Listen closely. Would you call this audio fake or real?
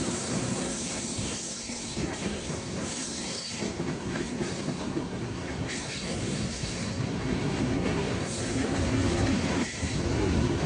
fake